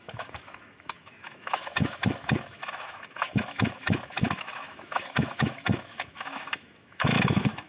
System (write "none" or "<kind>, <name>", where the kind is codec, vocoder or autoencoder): autoencoder, DAC-VAE